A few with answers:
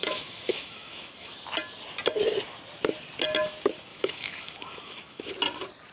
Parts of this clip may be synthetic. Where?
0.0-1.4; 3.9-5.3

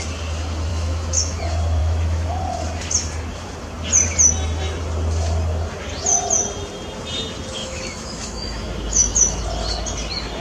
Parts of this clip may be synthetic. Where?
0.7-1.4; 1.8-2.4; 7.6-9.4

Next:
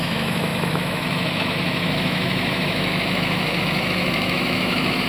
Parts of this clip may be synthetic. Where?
0.0-5.1

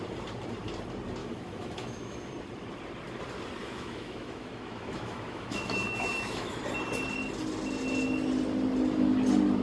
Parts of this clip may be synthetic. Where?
1.2-2.3; 3.6-6.6